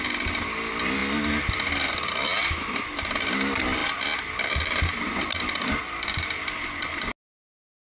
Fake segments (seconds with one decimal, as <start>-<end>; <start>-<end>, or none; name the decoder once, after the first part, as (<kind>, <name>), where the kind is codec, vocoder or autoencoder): none